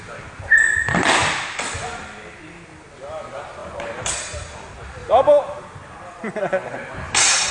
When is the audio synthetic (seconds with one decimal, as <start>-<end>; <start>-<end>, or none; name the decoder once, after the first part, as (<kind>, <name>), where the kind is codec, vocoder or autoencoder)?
3.6-4.2 (vocoder, BigVGAN v2); 5.0-7.1